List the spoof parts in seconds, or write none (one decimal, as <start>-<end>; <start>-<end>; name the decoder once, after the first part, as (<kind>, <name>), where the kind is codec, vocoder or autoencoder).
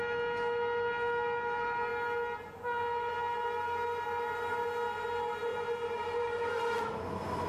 5.5-6.5 (vocoder, BigVGAN v2)